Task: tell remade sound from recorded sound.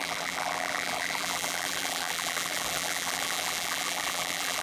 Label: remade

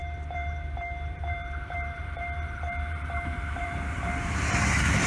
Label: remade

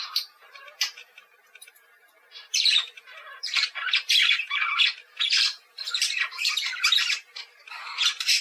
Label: remade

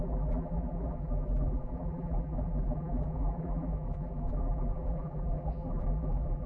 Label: remade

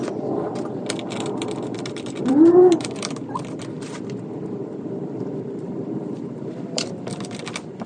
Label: remade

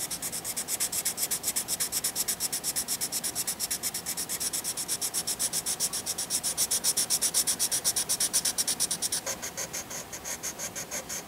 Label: recorded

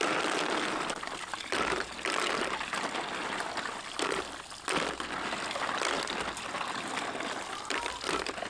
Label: recorded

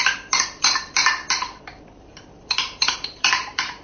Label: remade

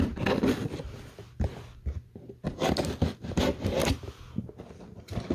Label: recorded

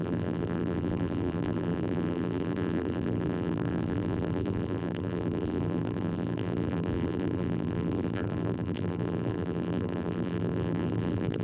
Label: remade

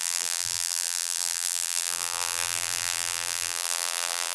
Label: remade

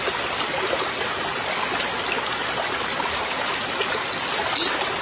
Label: recorded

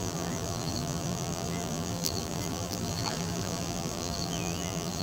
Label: remade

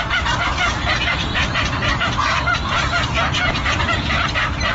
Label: remade